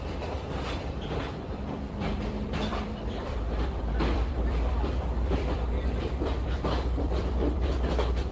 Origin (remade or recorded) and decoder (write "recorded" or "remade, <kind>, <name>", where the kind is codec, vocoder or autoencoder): remade, vocoder, BigVGAN v2